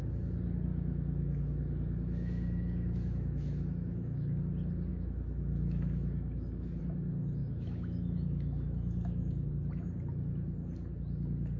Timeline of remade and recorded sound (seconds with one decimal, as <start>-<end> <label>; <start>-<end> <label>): 0.0-0.7 recorded; 0.7-4.4 remade; 4.4-4.9 recorded; 4.9-6.8 remade; 6.8-7.4 recorded; 7.4-9.5 remade; 9.5-11.6 recorded